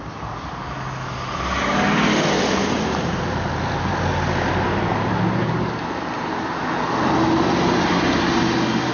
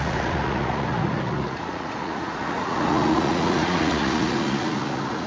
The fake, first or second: second